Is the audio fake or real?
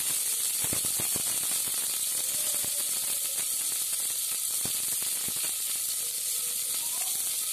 real